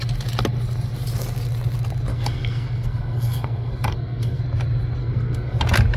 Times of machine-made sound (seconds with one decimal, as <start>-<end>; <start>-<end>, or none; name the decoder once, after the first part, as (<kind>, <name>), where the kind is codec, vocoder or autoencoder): 2.1-4.4 (codec, SNAC); 5.0-5.6